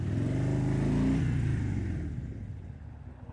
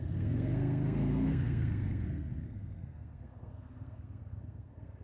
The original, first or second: first